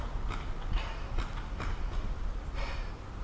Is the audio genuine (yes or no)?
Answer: yes